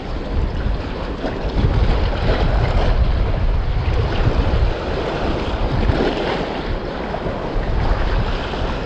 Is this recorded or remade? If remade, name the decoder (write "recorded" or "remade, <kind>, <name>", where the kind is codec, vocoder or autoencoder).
recorded